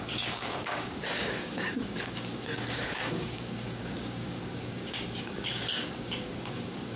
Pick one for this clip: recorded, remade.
remade